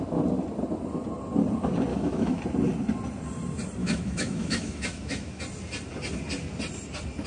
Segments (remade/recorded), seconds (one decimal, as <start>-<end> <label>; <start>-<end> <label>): 0.0-1.9 recorded; 1.9-2.4 remade; 2.4-3.8 recorded; 3.8-5.4 remade; 5.4-7.3 recorded